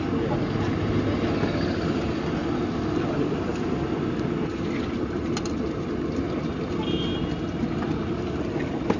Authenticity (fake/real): real